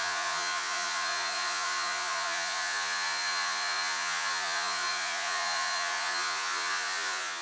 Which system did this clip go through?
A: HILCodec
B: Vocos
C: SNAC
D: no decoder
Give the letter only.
B